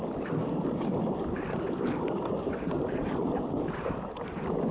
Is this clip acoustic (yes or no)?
yes